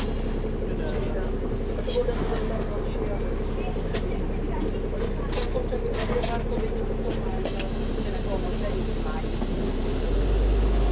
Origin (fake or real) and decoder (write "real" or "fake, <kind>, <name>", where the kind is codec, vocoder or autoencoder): real